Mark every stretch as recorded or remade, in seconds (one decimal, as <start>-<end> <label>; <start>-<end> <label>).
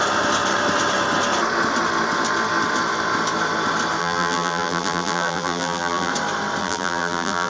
0.0-4.0 recorded; 4.0-6.1 remade; 6.1-6.6 recorded; 6.6-7.5 remade